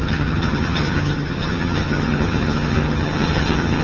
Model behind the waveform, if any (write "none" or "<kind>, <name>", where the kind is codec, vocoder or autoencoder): vocoder, HiFi-GAN